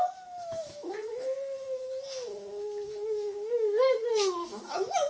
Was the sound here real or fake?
fake